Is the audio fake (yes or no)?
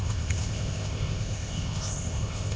yes